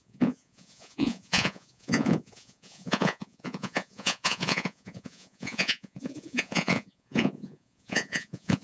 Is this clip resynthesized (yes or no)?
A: yes